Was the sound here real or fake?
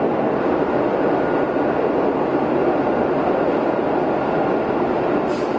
real